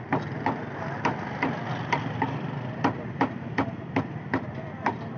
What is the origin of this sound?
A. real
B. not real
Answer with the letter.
A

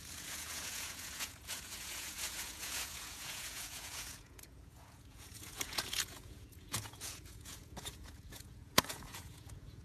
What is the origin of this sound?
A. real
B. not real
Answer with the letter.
B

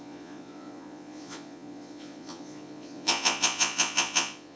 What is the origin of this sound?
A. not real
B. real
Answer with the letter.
A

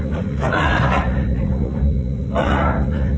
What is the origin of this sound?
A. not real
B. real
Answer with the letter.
A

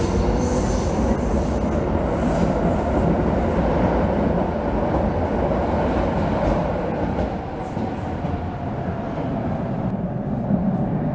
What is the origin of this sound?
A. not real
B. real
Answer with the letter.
B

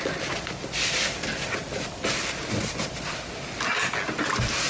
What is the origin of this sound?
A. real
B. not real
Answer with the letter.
A